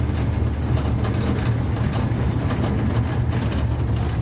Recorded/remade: recorded